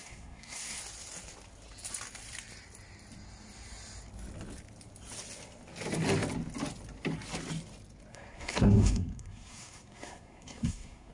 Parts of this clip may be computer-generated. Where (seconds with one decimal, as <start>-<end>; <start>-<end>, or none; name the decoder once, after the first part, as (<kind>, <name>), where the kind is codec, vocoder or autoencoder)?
0.0-0.8 (codec, SNAC); 8.1-11.1